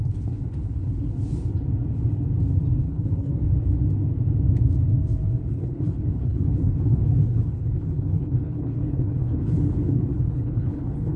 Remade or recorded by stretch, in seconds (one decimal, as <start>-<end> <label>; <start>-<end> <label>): 0.0-1.1 remade; 1.1-2.8 recorded; 2.8-3.3 remade; 3.3-5.5 recorded; 5.5-11.2 remade